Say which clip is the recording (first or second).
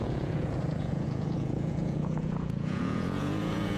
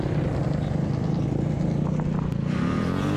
second